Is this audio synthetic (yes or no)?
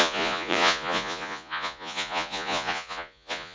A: yes